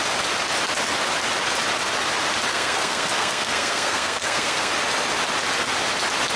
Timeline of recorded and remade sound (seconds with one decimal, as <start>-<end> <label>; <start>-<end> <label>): 0.0-2.5 recorded; 2.5-4.7 remade; 4.7-6.4 recorded